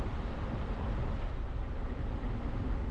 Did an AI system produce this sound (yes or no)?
no